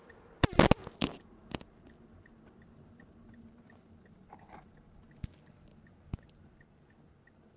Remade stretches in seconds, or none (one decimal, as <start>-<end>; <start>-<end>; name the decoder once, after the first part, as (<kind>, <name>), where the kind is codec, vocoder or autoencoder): 5.7-6.9 (vocoder, BigVGAN v2)